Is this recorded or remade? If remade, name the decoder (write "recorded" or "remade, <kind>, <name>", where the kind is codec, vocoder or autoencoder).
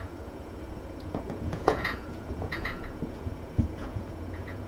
remade, vocoder, Vocos